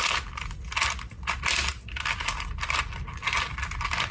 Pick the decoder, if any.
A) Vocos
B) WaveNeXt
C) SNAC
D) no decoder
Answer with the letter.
D